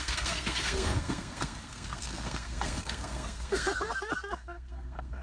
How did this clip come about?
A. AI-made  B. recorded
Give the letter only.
A